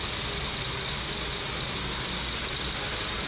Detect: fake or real real